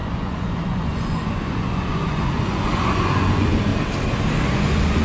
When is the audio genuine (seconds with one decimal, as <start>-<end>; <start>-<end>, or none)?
3.7-4.5

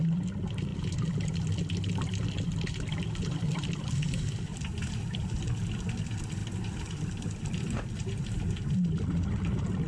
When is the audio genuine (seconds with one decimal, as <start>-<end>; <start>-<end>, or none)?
0.0-9.9

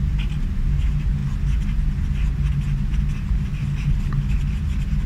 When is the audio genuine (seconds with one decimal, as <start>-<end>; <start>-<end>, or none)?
1.2-3.4

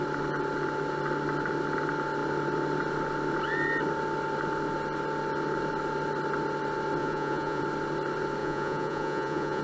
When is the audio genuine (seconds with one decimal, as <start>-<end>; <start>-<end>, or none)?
0.0-7.0; 7.6-8.4